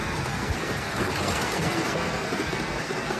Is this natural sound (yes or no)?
no